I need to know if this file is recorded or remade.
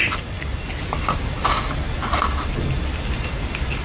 recorded